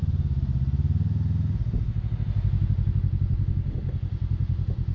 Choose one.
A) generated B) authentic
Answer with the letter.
B